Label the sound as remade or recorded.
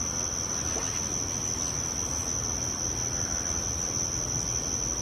recorded